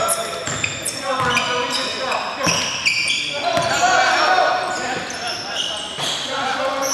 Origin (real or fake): real